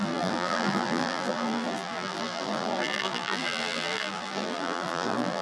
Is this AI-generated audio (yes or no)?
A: yes